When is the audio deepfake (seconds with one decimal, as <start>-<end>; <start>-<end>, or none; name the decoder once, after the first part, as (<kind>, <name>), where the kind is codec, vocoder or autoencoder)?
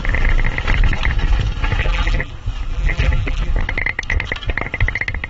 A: 1.8-2.3 (vocoder, BigVGAN v2); 2.7-3.5